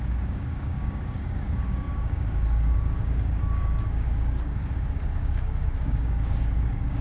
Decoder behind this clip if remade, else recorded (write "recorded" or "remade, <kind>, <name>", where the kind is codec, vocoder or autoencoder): remade, codec, DAC